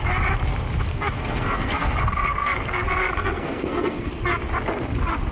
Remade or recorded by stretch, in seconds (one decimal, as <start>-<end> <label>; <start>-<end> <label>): 0.0-0.9 recorded; 0.9-4.1 remade; 4.1-5.3 recorded